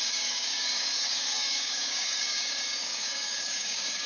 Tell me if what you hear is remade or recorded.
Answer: remade